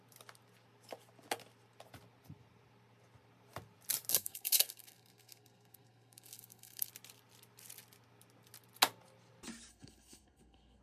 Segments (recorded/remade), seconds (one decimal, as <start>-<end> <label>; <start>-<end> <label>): 0.0-4.1 recorded; 4.1-6.9 remade; 6.9-9.7 recorded; 9.7-10.8 remade